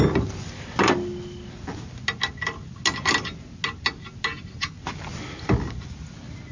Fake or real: real